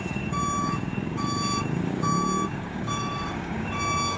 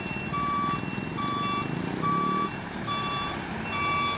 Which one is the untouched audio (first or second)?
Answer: second